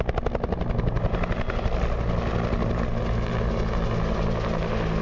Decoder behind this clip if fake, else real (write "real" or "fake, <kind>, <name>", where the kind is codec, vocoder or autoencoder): real